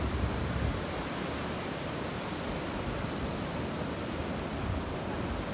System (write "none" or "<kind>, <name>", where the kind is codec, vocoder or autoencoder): none